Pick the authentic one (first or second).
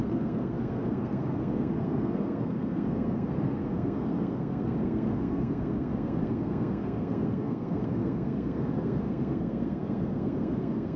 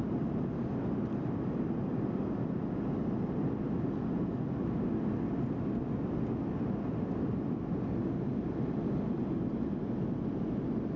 second